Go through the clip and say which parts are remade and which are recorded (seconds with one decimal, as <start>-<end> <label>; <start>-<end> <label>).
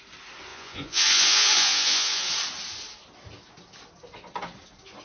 0.0-0.5 recorded; 0.5-2.3 remade; 2.3-5.0 recorded